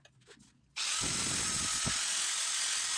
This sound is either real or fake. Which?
real